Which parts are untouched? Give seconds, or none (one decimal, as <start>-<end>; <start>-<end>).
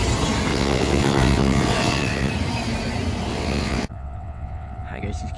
0.0-0.5; 2.3-3.3; 5.0-5.4